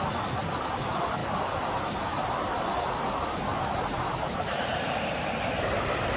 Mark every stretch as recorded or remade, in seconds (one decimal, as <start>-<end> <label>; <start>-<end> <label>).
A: 0.0-1.2 recorded; 1.2-4.9 remade; 4.9-6.2 recorded